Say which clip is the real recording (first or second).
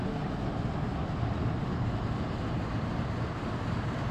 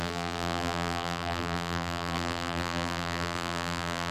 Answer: first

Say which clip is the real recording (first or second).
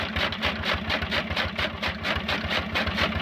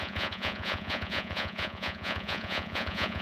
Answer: first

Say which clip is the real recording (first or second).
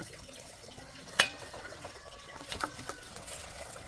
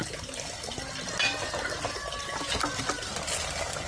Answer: second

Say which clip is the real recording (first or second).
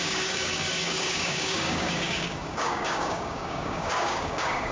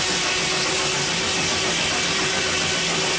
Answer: second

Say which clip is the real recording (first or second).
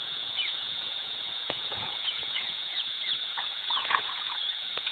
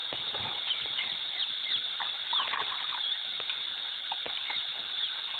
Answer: second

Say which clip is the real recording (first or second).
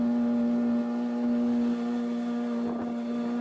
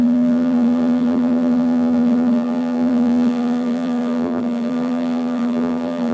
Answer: first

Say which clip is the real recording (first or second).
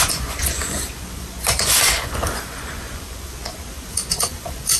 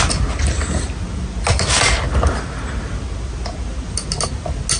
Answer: second